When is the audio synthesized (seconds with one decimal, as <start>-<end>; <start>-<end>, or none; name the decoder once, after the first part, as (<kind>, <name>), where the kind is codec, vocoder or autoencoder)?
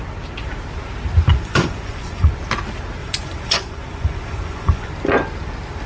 1.3-2.3 (vocoder, Vocos); 3.0-4.9